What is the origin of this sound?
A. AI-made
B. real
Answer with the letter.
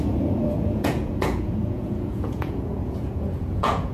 A